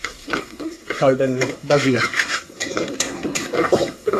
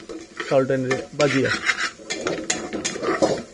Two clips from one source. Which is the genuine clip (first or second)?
second